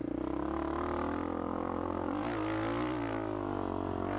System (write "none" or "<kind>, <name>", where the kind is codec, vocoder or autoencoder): none